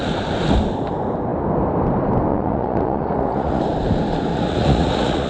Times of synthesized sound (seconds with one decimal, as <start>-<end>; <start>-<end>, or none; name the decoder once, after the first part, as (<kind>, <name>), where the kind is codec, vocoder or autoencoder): 2.3-3.6 (vocoder, Vocos); 4.3-5.3